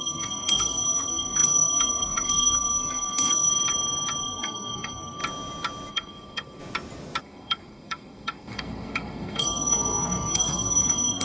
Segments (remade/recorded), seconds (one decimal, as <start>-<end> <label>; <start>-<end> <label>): 0.0-3.5 remade; 3.5-4.2 recorded; 4.2-5.2 remade; 5.2-5.9 recorded; 5.9-6.6 remade; 6.6-7.2 recorded; 7.2-11.2 remade

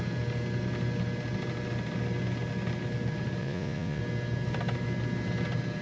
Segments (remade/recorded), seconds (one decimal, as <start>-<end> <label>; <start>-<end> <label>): 0.0-3.4 recorded; 3.4-4.0 remade; 4.0-5.8 recorded

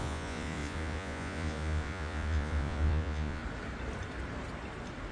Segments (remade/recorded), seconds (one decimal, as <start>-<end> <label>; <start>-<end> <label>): 0.0-3.4 remade; 3.4-5.1 recorded

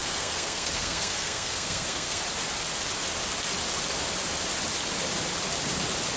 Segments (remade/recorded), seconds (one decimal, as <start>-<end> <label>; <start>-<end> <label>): 0.0-2.2 remade; 2.2-6.2 recorded

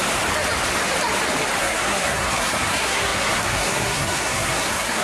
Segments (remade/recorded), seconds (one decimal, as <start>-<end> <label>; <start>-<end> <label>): 0.0-1.6 recorded; 1.6-5.0 remade

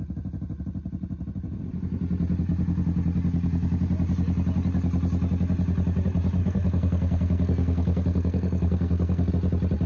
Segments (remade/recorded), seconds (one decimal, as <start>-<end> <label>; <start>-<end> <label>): 0.0-6.4 recorded; 6.4-9.3 remade; 9.3-9.9 recorded

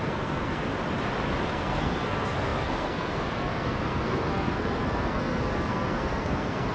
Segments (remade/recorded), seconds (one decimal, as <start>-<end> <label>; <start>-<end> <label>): 0.0-0.7 remade; 0.7-1.5 recorded; 1.5-6.7 remade

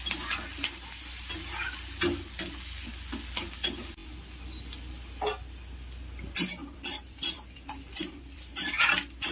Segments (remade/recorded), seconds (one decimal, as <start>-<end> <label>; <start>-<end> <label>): 0.0-6.6 recorded; 6.6-9.3 remade